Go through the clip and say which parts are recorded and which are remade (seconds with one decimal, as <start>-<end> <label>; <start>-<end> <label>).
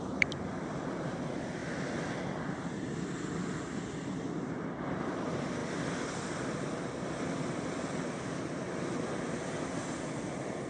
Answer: 0.0-10.7 recorded